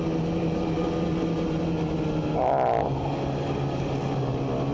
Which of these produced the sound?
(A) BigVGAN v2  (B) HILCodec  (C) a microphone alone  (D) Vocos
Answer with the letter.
C